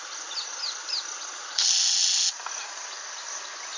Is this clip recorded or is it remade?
recorded